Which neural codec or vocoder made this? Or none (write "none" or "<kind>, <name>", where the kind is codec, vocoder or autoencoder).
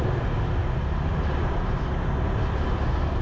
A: none